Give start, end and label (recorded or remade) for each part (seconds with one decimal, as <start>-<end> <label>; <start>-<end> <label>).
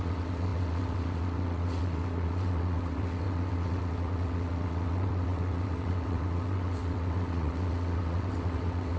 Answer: 0.0-9.0 remade